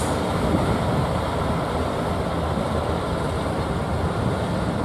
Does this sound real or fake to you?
fake